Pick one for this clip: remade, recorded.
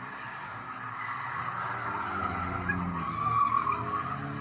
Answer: recorded